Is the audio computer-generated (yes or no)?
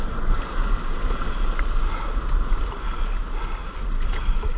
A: no